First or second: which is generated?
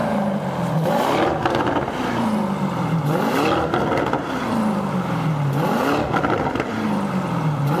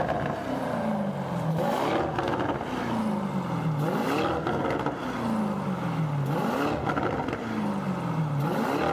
first